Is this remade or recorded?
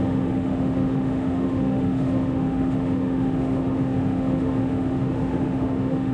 remade